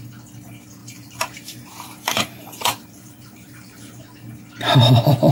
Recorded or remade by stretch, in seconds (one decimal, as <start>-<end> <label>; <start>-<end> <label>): 0.0-0.8 recorded; 0.8-4.0 remade; 4.0-5.3 recorded